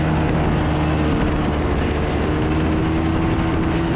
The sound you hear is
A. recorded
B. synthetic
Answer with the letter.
A